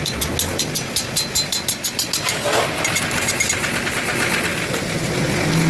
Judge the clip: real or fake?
real